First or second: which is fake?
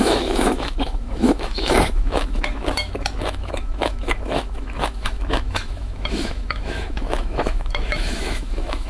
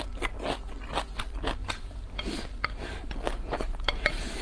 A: first